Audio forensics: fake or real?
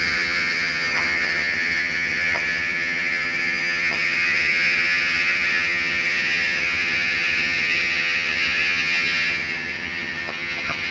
fake